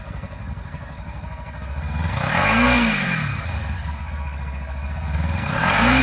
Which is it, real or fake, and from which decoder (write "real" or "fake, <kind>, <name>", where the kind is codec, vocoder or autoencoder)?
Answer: fake, codec, SNAC